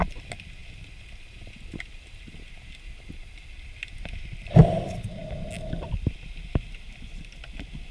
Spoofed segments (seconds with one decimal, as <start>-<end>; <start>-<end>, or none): none